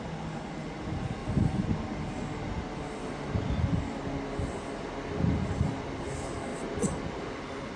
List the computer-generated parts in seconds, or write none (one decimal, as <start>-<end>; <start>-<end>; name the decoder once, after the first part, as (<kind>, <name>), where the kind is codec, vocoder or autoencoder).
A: none